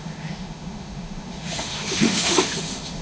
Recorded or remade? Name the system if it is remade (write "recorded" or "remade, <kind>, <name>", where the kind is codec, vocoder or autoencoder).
remade, autoencoder, DAC-VAE